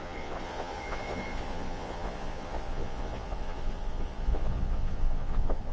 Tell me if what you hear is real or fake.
fake